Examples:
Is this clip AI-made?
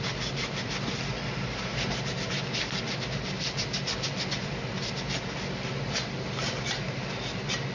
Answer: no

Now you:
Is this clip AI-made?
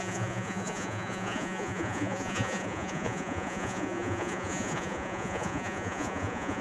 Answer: yes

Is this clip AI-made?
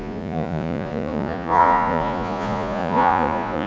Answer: yes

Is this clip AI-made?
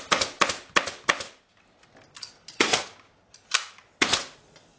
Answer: no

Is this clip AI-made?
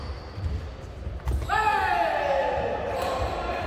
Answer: no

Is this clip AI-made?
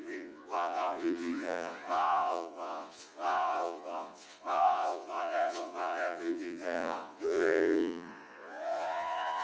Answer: yes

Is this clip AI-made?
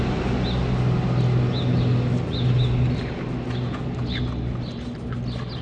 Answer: no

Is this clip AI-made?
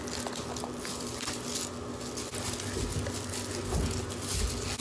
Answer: no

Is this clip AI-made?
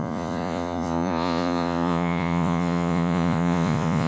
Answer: yes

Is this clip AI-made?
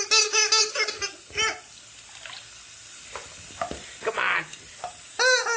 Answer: no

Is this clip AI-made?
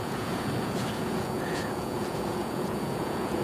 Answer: yes